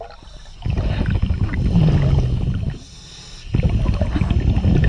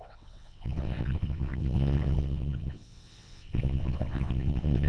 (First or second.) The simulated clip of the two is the second